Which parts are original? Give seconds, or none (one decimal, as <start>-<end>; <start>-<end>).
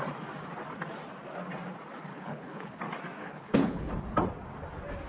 0.0-2.1; 2.8-3.2; 3.9-5.1